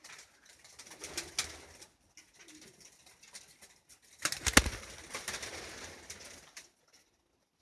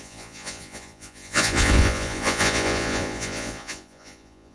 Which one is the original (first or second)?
first